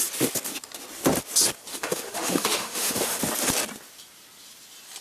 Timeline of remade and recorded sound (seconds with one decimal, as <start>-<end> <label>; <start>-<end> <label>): 0.0-1.7 recorded; 1.7-3.2 remade; 3.2-5.0 recorded